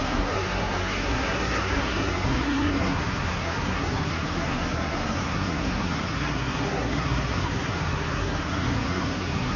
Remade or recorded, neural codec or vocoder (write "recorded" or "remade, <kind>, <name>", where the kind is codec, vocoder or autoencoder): remade, codec, SNAC